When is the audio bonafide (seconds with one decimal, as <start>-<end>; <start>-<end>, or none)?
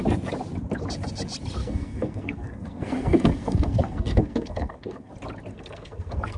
0.0-1.6; 5.1-5.5